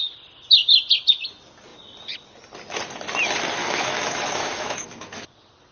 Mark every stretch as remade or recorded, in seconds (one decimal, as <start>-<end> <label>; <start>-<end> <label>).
0.0-3.6 recorded; 3.6-5.2 remade; 5.2-5.7 recorded